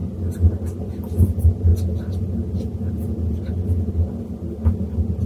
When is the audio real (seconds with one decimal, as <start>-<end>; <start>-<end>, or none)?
0.0-5.3